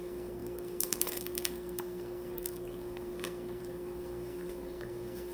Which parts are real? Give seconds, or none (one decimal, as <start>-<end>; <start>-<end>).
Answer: none